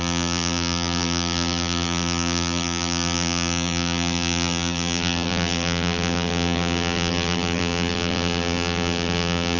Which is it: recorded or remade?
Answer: remade